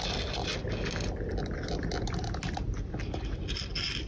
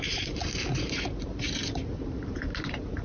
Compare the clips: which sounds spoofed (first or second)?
second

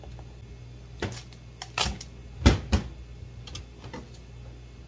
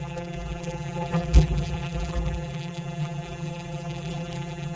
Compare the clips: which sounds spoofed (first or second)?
second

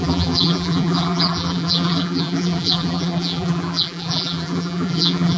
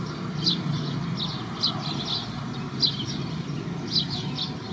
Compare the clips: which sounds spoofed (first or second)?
first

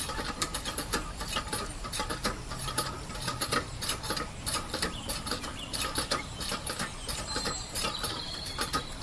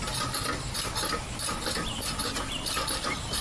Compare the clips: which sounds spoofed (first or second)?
first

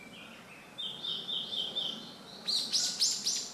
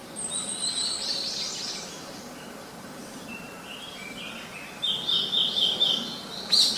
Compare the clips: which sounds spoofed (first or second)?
second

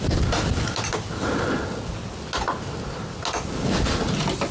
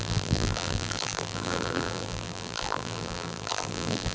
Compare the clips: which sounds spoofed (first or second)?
second